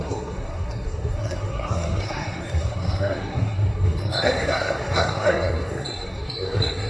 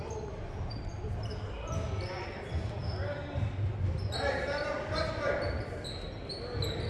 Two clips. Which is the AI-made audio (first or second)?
first